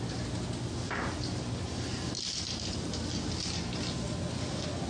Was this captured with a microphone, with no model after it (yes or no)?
yes